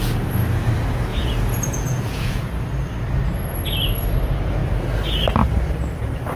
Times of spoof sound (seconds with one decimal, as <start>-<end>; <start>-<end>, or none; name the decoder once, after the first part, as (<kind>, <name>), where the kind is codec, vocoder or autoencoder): 1.1-2.5 (vocoder, Vocos)